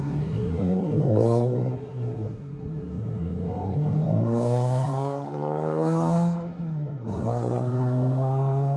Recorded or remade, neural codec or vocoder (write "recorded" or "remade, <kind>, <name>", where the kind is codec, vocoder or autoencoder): remade, codec, SNAC